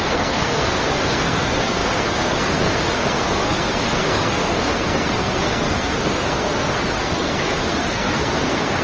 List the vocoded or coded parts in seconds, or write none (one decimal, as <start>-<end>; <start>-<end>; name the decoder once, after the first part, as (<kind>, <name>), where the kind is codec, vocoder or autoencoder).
0.0-8.8 (codec, SNAC)